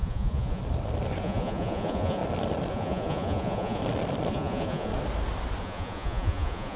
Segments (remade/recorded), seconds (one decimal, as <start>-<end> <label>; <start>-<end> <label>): 0.0-0.6 remade; 0.6-1.2 recorded; 1.2-2.2 remade; 2.2-2.7 recorded; 2.7-3.8 remade; 3.8-4.3 recorded; 4.3-4.9 remade; 4.9-5.6 recorded; 5.6-6.8 remade